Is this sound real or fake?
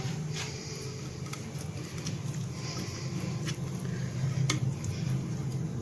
real